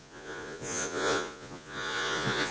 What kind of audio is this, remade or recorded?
remade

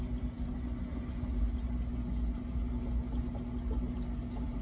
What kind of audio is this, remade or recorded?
recorded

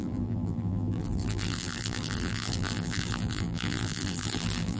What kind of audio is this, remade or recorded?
remade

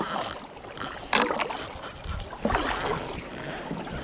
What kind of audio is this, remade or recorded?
recorded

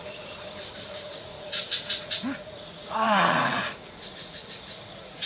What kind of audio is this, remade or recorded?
remade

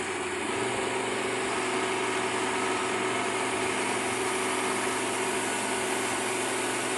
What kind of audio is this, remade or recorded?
recorded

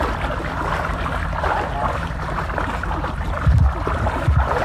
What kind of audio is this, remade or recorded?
recorded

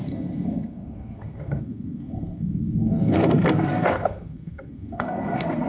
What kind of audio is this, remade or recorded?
remade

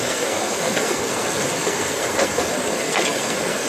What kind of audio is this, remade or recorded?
remade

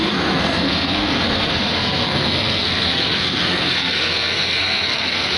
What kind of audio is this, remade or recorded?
remade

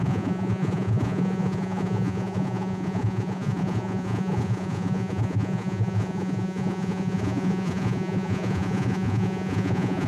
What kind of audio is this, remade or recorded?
remade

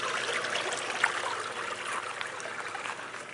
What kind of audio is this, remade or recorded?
recorded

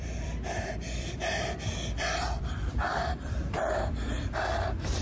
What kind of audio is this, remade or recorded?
remade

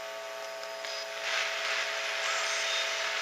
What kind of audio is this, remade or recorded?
recorded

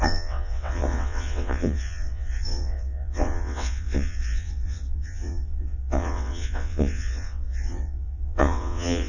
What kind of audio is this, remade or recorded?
remade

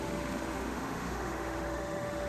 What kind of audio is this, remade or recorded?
remade